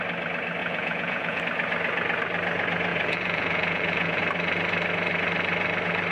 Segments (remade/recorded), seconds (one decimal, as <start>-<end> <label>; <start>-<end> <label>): 0.0-0.6 recorded; 0.6-1.4 remade; 1.4-2.9 recorded; 2.9-4.2 remade; 4.2-6.1 recorded

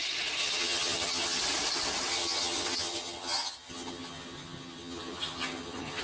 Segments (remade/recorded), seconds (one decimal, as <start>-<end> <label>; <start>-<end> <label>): 0.0-0.4 recorded; 0.4-1.4 remade; 1.4-2.1 recorded; 2.1-6.0 remade

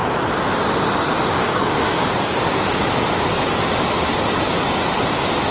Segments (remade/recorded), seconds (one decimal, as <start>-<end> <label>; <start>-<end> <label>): 0.0-1.3 recorded; 1.3-2.4 remade; 2.4-5.5 recorded

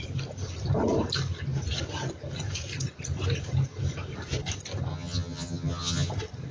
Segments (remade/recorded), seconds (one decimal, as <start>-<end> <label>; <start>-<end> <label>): 0.0-4.9 recorded; 4.9-6.1 remade; 6.1-6.5 recorded

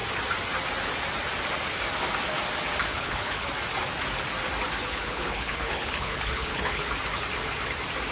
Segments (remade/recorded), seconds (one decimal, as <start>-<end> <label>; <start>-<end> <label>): 0.0-2.9 recorded; 2.9-3.5 remade; 3.5-4.9 recorded; 4.9-6.9 remade; 6.9-8.1 recorded

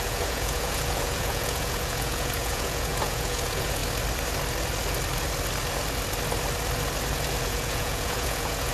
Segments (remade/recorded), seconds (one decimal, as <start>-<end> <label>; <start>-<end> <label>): 0.0-3.8 remade; 3.8-7.4 recorded; 7.4-8.7 remade